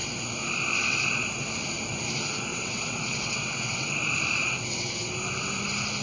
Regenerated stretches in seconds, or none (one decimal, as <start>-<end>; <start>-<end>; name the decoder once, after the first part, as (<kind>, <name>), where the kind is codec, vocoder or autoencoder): 2.5-3.9 (vocoder, WaveNeXt); 4.4-5.1